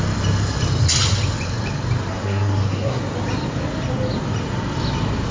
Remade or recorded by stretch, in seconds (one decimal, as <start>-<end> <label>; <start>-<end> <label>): 0.0-2.1 recorded; 2.1-3.0 remade; 3.0-5.3 recorded